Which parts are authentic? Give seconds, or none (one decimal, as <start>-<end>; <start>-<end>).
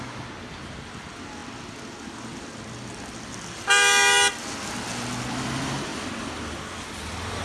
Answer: 0.0-7.4